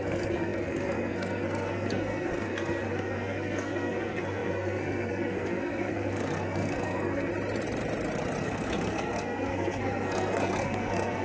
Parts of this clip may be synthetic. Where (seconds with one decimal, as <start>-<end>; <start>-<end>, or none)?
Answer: 0.0-7.3; 8.4-11.2